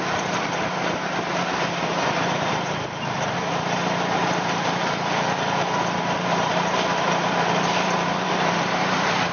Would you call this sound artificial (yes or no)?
yes